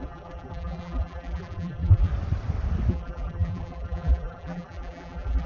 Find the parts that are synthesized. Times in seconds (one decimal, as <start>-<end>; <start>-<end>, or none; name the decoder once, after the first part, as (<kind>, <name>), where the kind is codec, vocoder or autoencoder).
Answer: 0.0-2.1 (vocoder, BigVGAN v2); 2.9-5.5